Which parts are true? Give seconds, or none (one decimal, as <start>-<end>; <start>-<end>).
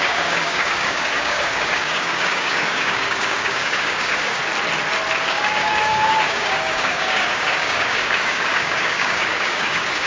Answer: 4.4-5.3